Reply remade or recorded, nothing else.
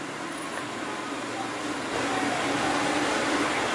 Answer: recorded